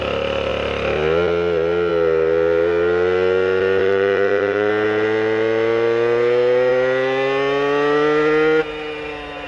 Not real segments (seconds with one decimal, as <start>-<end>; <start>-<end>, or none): 3.8-4.7